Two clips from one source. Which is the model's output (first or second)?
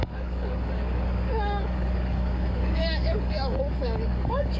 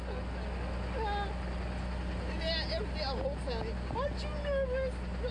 first